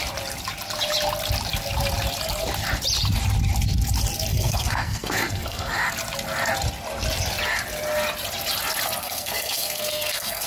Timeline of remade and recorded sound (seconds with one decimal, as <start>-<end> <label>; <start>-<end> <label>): 0.0-4.3 recorded; 4.3-5.9 remade; 5.9-9.0 recorded; 9.0-10.5 remade